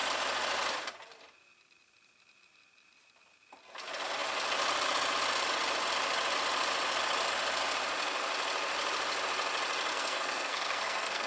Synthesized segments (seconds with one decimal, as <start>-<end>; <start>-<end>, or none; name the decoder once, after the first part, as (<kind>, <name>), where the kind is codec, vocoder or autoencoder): 9.9-11.3 (codec, SNAC)